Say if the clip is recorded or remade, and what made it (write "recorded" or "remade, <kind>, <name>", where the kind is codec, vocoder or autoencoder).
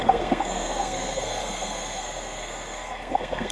remade, codec, SNAC